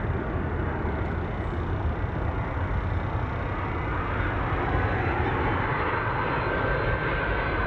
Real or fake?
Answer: real